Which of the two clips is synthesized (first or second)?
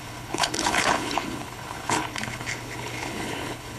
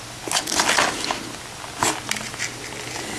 first